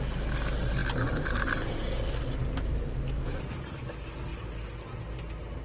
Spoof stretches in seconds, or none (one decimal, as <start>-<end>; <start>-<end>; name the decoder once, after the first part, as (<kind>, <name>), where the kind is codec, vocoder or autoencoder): none